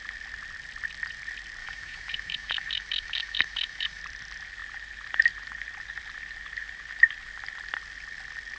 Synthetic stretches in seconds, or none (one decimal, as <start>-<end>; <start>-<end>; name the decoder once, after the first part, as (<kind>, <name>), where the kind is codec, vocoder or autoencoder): 1.6-4.0 (autoencoder, DAC-VAE)